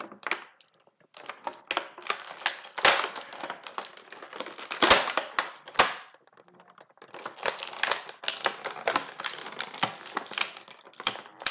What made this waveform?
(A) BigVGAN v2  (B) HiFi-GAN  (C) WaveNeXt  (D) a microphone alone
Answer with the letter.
D